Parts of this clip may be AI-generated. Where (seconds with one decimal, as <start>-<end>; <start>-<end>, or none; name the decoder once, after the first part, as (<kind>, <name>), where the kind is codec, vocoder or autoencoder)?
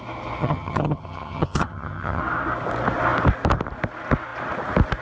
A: 0.4-2.2 (vocoder, HiFi-GAN)